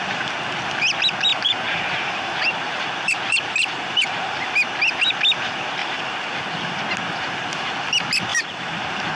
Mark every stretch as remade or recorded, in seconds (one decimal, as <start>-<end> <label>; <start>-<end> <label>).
0.0-1.3 recorded; 1.3-4.5 remade; 4.5-5.8 recorded; 5.8-6.8 remade; 6.8-8.3 recorded; 8.3-9.1 remade